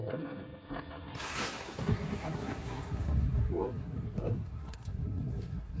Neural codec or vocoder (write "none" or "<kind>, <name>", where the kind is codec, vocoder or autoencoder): codec, SNAC